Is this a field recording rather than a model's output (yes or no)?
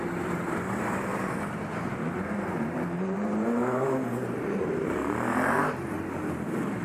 no